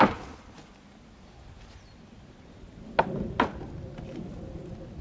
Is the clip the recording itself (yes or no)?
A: yes